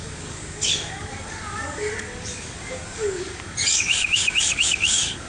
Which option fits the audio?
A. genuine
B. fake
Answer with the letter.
B